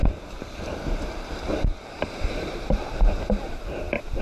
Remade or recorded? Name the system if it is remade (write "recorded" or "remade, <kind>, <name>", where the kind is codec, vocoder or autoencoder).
remade, vocoder, BigVGAN v2